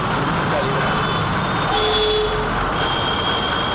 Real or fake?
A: real